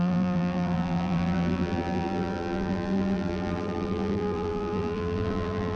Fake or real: fake